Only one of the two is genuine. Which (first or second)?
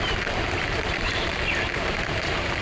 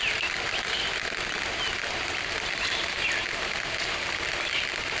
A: second